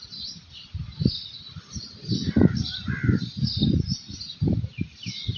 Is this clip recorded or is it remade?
recorded